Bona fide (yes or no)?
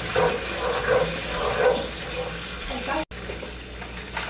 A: yes